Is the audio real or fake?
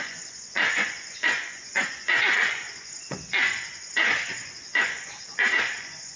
fake